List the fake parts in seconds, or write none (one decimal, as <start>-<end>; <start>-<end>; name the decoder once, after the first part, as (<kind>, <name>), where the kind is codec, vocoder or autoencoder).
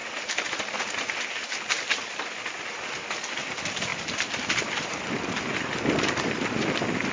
none